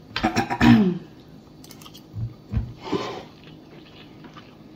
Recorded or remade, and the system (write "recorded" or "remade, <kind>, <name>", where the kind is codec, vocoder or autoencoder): recorded